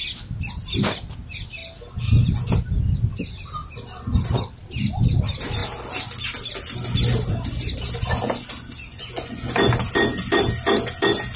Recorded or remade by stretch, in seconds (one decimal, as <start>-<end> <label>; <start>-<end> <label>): 0.0-8.9 recorded; 8.9-9.5 remade; 9.5-11.4 recorded